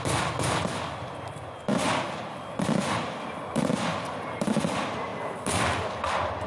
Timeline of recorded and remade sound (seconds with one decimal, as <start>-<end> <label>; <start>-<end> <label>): 0.0-6.5 recorded